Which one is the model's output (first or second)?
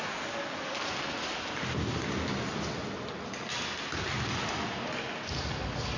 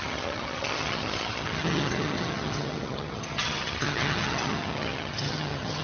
second